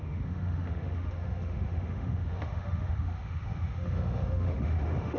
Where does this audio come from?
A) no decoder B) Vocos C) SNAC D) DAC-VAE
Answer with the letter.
D